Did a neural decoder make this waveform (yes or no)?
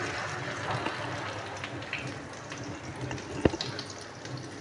no